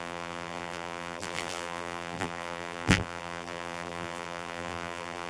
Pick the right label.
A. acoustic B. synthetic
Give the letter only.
B